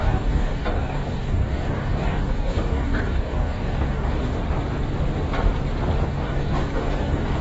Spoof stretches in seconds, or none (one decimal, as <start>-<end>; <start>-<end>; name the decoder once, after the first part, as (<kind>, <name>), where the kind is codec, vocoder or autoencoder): 0.0-4.4 (codec, DAC); 6.1-7.4